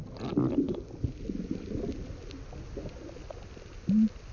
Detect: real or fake real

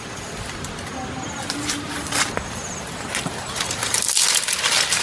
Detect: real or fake real